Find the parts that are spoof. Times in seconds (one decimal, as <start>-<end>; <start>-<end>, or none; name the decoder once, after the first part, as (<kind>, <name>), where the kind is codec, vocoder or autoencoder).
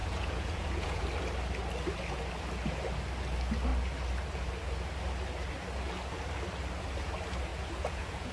0.0-1.0 (vocoder, Vocos); 7.5-8.3